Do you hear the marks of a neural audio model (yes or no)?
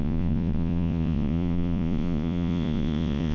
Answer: yes